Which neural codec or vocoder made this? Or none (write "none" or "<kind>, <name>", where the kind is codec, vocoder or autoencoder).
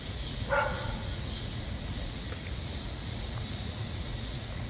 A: vocoder, Vocos